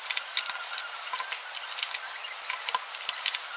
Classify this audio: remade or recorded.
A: recorded